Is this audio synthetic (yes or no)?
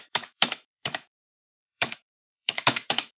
yes